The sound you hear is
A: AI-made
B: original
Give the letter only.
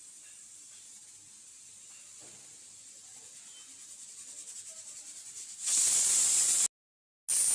B